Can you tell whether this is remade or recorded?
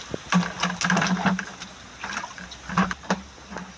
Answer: recorded